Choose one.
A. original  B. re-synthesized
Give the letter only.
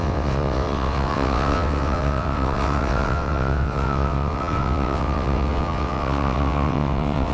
B